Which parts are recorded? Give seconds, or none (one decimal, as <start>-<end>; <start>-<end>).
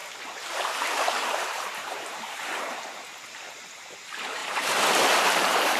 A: 0.0-0.5; 2.7-3.5